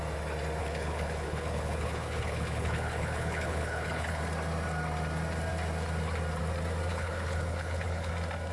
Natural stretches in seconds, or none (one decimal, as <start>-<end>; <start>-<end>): 0.0-0.6; 4.2-6.9; 8.1-8.5